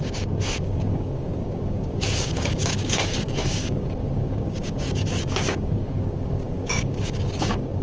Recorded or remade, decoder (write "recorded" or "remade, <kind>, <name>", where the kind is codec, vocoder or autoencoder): remade, codec, DAC